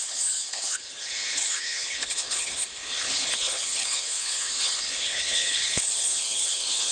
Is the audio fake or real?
fake